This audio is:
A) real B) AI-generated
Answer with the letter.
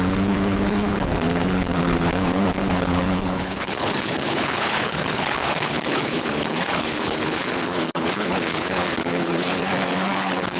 B